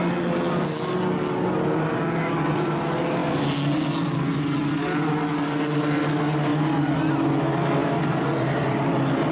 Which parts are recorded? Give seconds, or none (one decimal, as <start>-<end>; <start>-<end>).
0.0-3.2; 4.6-7.8